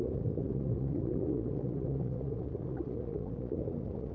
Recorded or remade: remade